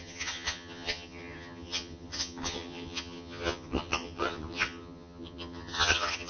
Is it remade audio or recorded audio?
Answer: remade